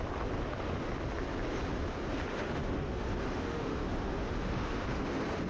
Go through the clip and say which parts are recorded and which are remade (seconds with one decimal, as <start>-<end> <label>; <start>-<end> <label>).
0.0-2.3 recorded; 2.3-5.1 remade; 5.1-5.5 recorded